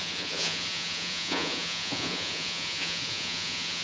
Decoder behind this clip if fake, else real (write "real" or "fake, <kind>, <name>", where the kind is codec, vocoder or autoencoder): fake, vocoder, Vocos